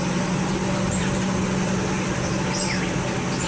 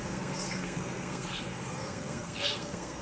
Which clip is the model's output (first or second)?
second